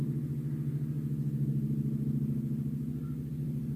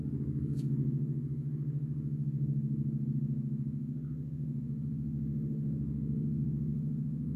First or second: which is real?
first